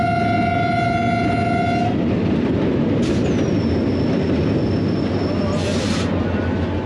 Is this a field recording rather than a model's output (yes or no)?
yes